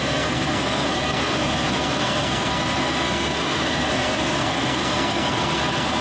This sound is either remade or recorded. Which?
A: remade